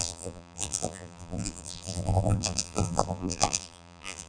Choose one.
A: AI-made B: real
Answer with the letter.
A